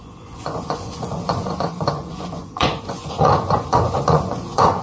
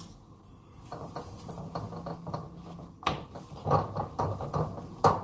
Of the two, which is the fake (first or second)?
first